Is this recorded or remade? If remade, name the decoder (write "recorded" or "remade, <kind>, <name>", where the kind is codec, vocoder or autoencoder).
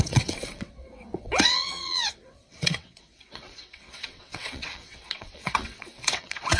remade, vocoder, WaveNeXt